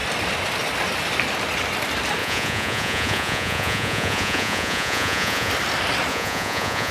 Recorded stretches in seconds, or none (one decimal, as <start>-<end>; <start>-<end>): 0.0-2.2; 5.5-6.1